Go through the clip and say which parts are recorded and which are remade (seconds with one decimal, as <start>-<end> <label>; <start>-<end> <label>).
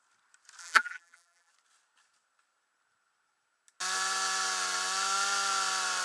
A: 0.0-0.6 recorded; 0.6-1.5 remade; 1.5-6.0 recorded